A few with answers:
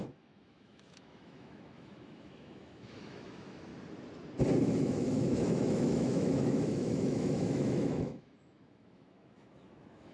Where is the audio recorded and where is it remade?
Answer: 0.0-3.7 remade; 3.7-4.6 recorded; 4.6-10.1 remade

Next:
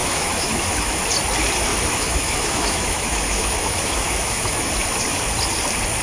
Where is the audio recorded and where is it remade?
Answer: 0.0-1.0 remade; 1.0-1.7 recorded; 1.7-4.7 remade; 4.7-6.0 recorded

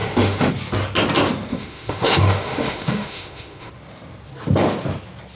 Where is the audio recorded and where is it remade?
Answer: 0.0-0.5 remade; 0.5-1.5 recorded; 1.5-3.7 remade; 3.7-5.4 recorded

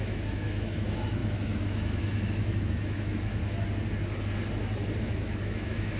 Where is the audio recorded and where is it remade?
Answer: 0.0-3.4 remade; 3.4-5.0 recorded; 5.0-6.0 remade